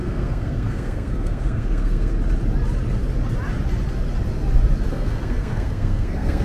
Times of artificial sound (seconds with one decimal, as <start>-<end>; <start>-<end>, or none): 0.0-2.1; 4.9-6.4